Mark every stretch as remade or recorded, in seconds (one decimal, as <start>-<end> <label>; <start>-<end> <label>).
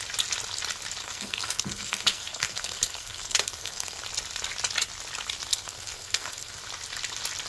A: 0.0-1.0 recorded; 1.0-4.0 remade; 4.0-5.5 recorded; 5.5-6.6 remade; 6.6-7.5 recorded